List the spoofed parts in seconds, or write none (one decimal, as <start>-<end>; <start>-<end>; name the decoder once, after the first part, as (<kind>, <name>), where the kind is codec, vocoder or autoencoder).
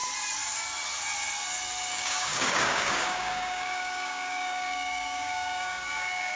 1.9-6.4 (codec, DAC)